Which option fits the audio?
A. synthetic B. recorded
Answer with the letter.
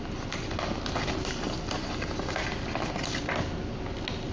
B